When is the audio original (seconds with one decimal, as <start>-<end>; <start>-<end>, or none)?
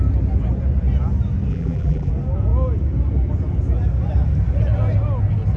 0.0-1.5; 2.1-5.6